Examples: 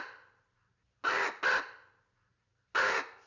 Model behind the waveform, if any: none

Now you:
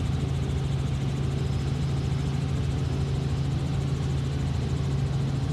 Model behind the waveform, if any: none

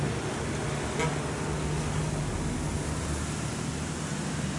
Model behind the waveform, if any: none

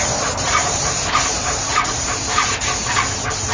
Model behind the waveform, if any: none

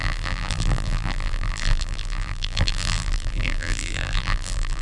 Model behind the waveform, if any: vocoder, BigVGAN v2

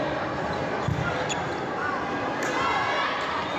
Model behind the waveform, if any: none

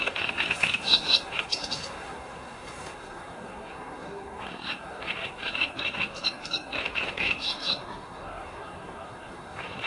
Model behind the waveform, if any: codec, SNAC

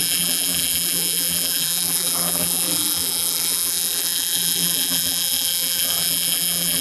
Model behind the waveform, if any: vocoder, BigVGAN v2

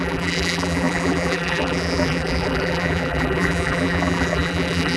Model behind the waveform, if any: vocoder, BigVGAN v2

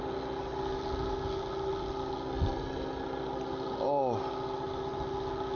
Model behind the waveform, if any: none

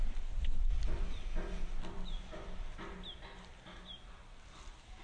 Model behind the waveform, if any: none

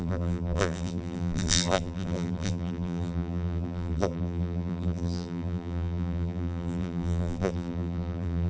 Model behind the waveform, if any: vocoder, BigVGAN v2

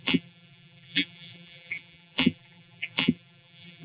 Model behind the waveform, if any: vocoder, BigVGAN v2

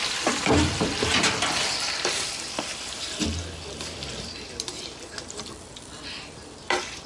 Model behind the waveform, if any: vocoder, BigVGAN v2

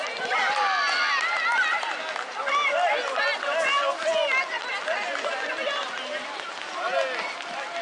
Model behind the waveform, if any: none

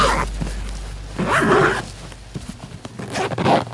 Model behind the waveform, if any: none